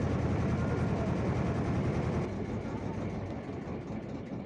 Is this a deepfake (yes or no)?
yes